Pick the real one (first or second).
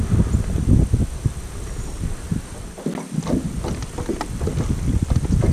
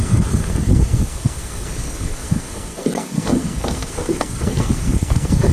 first